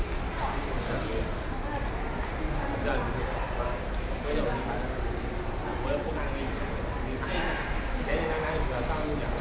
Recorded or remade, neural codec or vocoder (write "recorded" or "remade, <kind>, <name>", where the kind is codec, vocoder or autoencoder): recorded